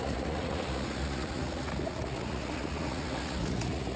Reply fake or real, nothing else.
fake